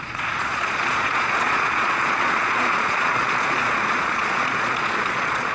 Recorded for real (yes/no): no